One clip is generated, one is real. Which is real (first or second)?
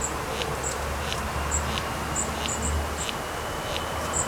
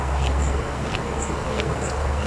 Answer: first